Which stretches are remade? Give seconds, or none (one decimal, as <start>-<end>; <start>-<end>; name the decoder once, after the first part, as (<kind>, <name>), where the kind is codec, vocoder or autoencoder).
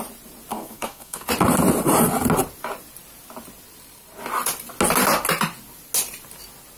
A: 0.5-1.3 (codec, SNAC)